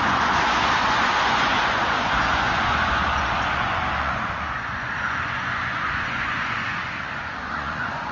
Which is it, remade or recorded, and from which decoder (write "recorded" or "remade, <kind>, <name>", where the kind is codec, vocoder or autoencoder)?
remade, vocoder, Vocos